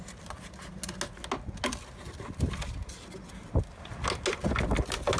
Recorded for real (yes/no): yes